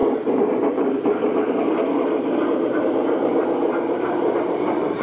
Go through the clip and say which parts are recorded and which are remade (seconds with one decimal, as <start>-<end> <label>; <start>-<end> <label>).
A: 0.0-5.0 remade